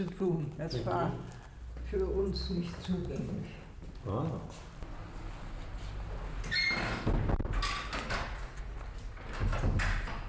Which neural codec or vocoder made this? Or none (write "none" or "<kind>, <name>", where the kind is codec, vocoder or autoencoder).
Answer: none